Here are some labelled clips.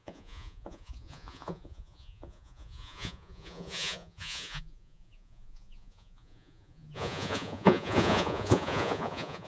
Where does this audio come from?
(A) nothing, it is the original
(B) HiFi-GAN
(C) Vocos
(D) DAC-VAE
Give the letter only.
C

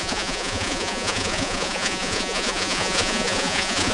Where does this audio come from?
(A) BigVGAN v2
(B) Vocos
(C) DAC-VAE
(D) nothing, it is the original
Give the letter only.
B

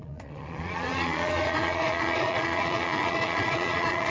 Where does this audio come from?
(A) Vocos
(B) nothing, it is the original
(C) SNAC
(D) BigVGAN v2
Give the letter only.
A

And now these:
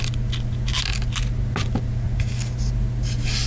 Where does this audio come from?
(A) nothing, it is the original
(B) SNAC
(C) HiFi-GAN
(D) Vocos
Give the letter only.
A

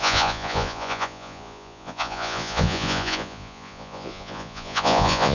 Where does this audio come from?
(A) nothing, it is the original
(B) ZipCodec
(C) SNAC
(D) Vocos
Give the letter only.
D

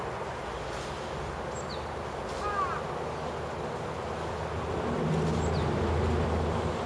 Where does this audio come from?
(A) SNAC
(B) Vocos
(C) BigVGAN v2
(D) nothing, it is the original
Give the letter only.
D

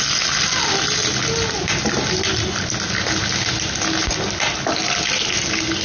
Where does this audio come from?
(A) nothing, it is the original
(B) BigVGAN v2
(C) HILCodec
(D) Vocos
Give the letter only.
A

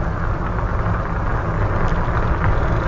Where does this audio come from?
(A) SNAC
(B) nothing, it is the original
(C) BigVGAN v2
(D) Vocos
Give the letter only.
B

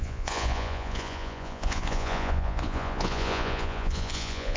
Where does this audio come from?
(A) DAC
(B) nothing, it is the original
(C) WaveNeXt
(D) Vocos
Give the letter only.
D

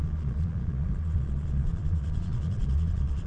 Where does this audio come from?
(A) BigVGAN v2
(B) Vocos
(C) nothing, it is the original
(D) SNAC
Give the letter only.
B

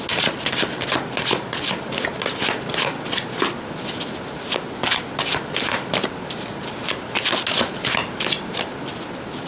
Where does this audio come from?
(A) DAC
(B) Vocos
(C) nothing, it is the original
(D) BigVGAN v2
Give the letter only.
C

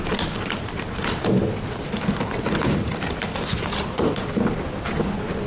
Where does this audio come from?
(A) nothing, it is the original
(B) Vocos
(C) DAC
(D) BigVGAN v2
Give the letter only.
A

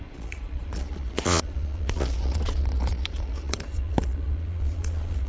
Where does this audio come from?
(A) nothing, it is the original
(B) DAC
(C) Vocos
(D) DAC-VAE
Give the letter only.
C